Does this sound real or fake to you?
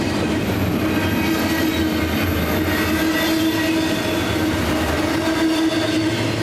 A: real